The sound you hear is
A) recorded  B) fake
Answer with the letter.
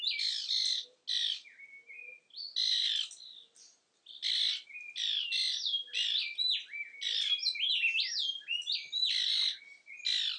A